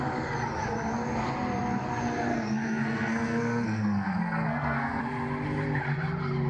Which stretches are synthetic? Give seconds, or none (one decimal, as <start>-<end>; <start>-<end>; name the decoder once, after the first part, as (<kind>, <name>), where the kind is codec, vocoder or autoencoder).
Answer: 2.3-5.0 (codec, SNAC)